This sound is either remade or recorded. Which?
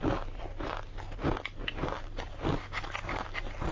recorded